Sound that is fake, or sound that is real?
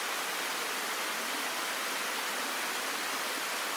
real